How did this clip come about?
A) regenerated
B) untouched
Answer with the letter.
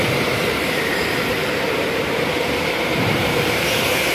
A